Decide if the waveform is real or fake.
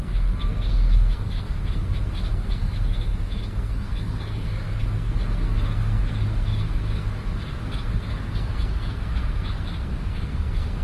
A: fake